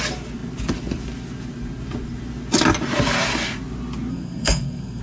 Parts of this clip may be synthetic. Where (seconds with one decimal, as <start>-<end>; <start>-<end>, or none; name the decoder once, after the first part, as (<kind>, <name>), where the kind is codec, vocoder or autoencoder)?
4.1-5.0 (codec, SNAC)